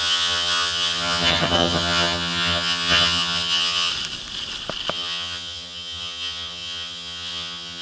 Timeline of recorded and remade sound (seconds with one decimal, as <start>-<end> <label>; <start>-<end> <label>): 0.0-3.9 remade; 3.9-4.9 recorded; 4.9-7.8 remade